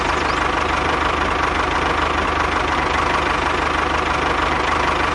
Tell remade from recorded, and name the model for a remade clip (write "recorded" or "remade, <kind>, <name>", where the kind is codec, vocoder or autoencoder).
recorded